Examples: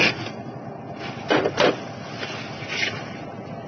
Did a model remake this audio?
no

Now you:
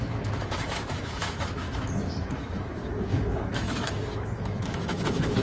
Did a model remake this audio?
yes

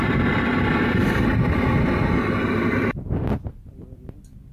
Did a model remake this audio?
no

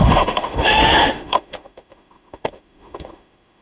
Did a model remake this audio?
yes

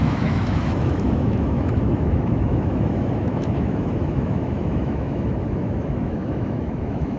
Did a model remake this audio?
yes